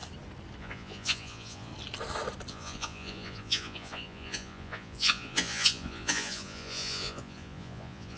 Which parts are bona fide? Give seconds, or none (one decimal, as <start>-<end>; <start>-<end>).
0.0-0.6; 1.7-2.5